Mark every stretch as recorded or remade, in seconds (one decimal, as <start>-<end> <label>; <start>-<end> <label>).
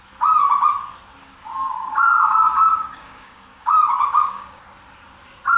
0.0-1.6 recorded; 1.6-4.6 remade; 4.6-5.6 recorded